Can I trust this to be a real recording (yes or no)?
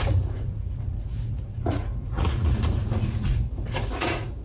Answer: no